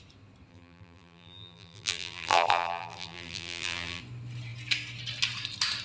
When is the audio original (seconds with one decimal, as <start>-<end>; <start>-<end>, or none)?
0.0-0.5; 4.0-5.8